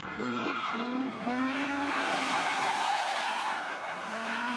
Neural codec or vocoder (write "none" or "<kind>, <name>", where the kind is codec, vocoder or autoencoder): codec, SNAC